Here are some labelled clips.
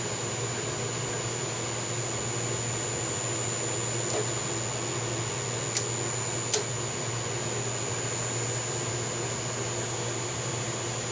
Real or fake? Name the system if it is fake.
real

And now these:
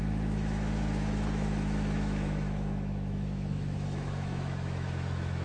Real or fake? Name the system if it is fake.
fake, autoencoder, DAC-VAE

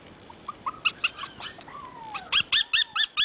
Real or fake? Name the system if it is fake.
real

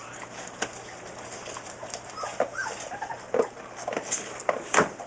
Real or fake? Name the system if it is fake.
real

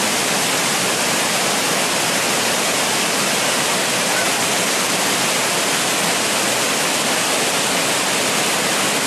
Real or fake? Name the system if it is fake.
real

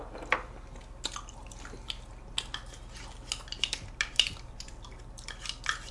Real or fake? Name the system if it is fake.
real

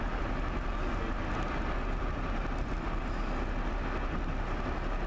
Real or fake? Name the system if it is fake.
real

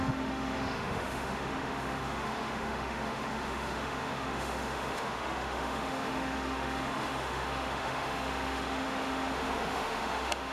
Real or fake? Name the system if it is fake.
fake, autoencoder, DAC-VAE